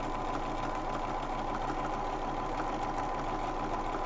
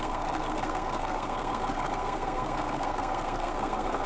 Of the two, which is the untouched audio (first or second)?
first